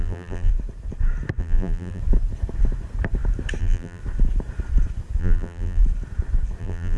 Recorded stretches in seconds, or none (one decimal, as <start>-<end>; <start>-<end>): 0.5-1.4; 2.0-3.6; 4.0-5.2; 5.8-6.6